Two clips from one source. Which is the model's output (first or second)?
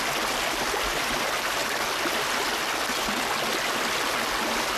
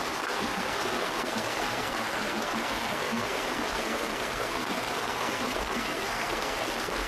second